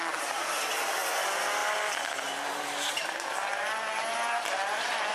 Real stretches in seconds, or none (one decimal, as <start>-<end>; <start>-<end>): 0.0-5.1

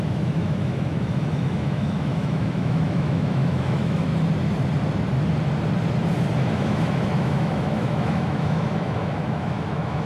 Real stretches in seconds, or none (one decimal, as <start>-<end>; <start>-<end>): 4.1-6.4

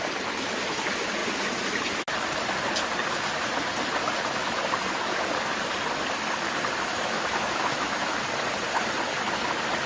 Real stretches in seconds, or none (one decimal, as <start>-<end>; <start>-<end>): 0.0-6.9; 8.0-9.9

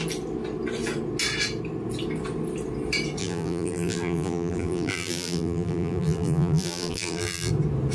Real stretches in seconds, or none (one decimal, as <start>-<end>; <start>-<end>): 0.0-3.2; 7.5-7.9

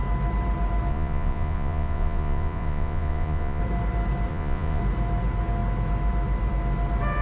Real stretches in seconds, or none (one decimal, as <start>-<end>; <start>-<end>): 0.0-0.9; 3.6-4.3; 4.8-7.2